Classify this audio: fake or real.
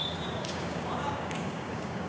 fake